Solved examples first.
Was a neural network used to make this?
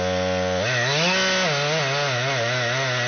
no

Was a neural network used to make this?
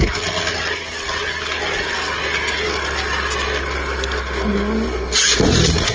no